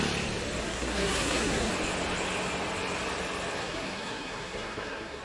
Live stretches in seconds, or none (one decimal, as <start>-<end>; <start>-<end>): 0.0-0.6; 1.7-3.6

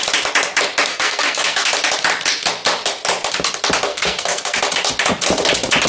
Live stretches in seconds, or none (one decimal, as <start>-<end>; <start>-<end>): 0.0-0.9; 1.7-3.9; 4.6-5.9

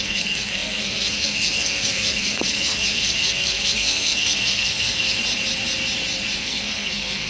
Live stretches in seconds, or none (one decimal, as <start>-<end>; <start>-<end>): 5.2-6.4

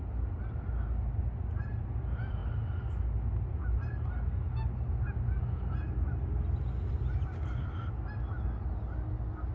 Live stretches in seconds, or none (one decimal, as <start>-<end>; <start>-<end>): 0.0-9.5

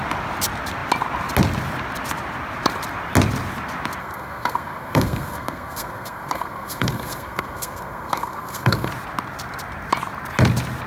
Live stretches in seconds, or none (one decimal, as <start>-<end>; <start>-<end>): 0.0-4.0; 8.9-10.9